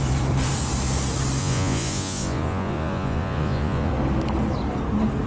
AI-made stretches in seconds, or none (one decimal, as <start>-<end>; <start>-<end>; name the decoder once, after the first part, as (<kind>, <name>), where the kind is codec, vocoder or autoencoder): 1.4-3.9 (vocoder, Vocos)